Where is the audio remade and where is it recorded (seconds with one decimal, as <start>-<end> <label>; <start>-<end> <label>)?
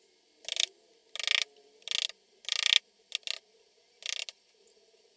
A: 0.0-5.2 recorded